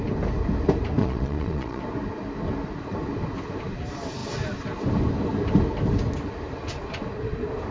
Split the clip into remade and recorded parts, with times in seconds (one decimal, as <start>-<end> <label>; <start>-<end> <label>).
0.0-1.0 recorded; 1.0-1.8 remade; 1.8-7.7 recorded